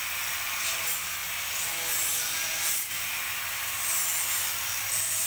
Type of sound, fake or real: real